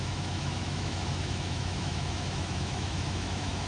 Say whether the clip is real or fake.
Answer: fake